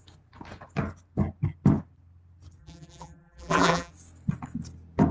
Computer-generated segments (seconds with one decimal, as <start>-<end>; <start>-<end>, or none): 2.6-3.9